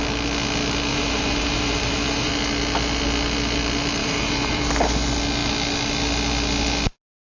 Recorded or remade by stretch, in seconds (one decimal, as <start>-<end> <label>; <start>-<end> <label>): 0.0-0.9 recorded; 0.9-2.3 remade; 2.3-4.0 recorded; 4.0-4.7 remade; 4.7-7.2 recorded